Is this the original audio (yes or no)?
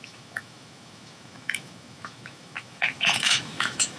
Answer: no